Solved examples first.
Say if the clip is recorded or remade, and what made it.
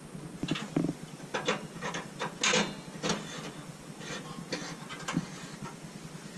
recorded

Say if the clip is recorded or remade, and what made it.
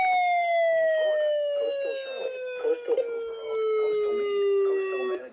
recorded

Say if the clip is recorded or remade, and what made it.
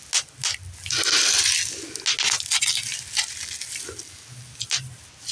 recorded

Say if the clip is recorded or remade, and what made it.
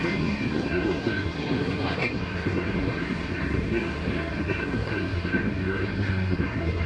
remade, codec, SNAC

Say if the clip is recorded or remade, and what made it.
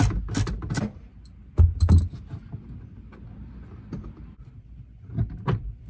recorded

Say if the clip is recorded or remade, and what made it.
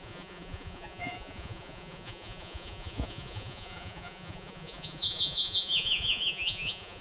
remade, vocoder, Vocos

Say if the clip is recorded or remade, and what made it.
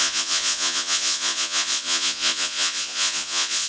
remade, vocoder, Vocos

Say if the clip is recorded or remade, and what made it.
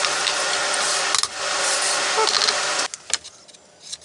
recorded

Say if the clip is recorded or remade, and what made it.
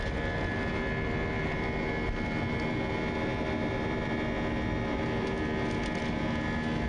recorded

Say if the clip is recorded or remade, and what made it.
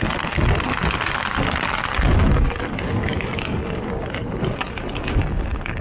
remade, vocoder, BigVGAN v2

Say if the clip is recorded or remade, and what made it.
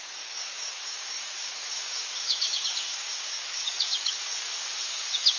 remade, codec, DAC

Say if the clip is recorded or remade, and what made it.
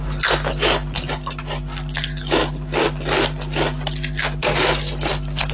recorded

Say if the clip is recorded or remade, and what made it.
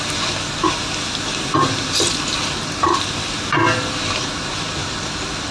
recorded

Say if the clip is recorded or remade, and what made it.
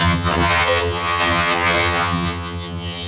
remade, vocoder, HiFi-GAN